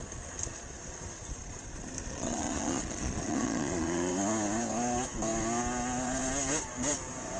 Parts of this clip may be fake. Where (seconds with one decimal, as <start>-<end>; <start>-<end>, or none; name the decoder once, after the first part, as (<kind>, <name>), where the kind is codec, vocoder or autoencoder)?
2.1-4.1 (vocoder, Vocos)